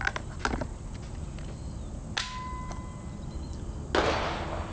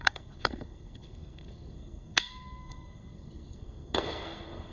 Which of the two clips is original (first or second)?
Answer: first